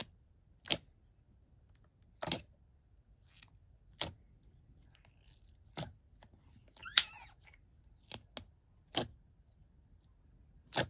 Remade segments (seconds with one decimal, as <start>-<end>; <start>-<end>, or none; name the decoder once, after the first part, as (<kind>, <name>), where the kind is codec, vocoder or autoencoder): 6.8-7.4 (vocoder, Vocos)